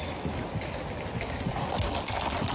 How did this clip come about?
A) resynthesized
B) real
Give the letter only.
B